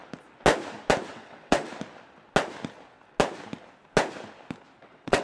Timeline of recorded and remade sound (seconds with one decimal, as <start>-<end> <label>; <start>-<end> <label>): 0.0-1.1 recorded; 1.1-1.7 remade; 1.7-4.8 recorded; 4.8-5.2 remade